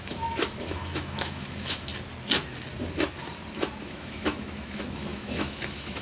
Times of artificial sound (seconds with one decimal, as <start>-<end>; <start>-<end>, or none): 0.0-1.9; 3.8-6.0